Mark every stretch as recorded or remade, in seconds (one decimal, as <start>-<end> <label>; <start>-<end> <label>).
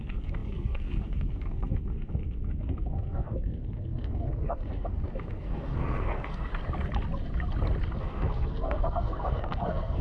0.0-6.5 remade; 6.5-8.0 recorded; 8.0-10.0 remade